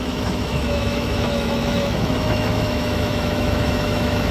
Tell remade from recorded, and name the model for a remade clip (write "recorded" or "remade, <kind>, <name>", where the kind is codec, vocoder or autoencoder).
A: remade, autoencoder, DAC-VAE